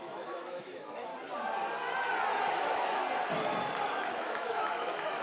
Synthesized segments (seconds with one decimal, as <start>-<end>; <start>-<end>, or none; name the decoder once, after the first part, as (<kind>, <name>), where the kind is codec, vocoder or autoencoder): 0.0-1.1 (autoencoder, DAC-VAE); 2.5-3.0; 3.9-5.2